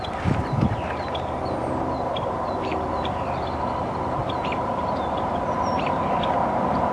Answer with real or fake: fake